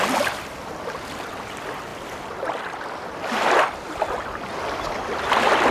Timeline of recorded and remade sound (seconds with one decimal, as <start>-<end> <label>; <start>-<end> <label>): 0.0-5.7 recorded